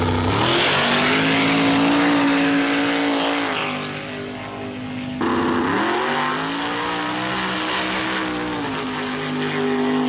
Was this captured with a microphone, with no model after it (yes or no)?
yes